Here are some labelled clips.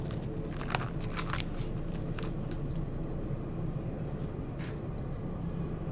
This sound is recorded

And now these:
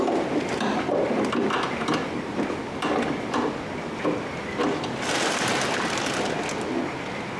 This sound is recorded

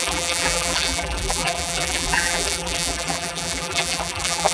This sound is remade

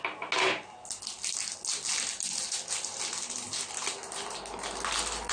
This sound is recorded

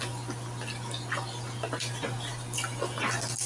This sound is recorded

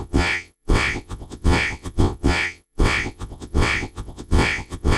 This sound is remade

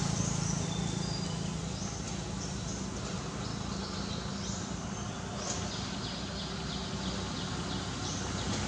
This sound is recorded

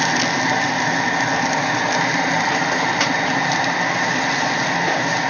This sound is recorded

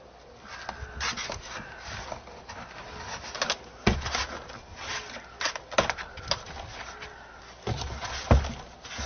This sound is recorded